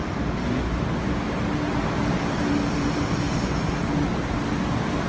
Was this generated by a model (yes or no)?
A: no